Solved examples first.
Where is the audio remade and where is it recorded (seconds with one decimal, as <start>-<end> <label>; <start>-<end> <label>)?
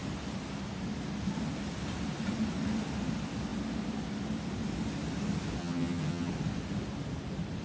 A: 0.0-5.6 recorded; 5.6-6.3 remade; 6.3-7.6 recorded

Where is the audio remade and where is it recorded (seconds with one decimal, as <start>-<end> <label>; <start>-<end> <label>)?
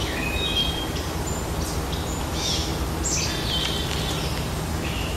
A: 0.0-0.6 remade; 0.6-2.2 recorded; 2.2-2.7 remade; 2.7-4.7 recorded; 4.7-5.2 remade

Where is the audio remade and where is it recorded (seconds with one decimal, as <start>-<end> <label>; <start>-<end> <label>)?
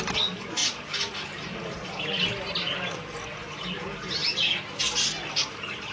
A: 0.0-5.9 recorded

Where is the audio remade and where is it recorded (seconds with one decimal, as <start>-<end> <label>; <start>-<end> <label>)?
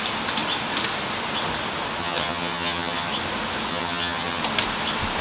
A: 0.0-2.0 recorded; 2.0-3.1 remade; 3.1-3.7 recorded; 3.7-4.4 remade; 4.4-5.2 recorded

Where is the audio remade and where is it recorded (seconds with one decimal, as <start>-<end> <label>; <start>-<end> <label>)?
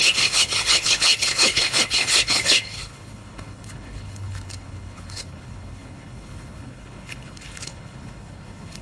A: 0.0-8.8 remade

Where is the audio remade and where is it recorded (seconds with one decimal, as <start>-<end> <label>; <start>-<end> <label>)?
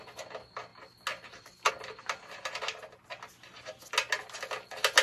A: 0.0-5.0 recorded